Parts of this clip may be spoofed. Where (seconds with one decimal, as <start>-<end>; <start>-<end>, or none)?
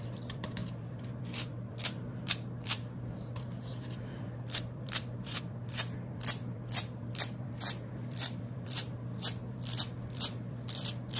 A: 0.0-11.2